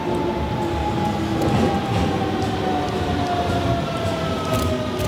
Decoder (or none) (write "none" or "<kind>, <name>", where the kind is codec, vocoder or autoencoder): none